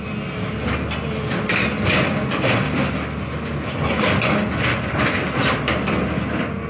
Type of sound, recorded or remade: recorded